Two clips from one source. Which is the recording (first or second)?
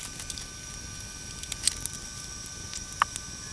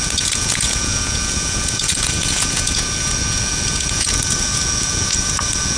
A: first